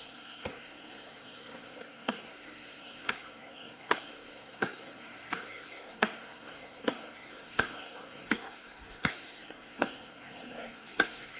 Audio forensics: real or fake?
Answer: fake